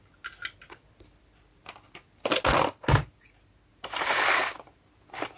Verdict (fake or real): real